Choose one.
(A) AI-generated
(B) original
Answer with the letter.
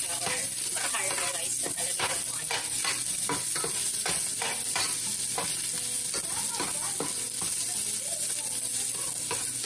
B